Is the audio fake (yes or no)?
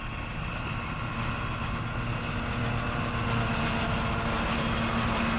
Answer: no